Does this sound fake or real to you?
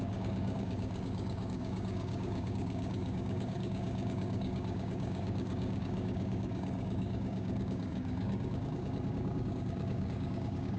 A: fake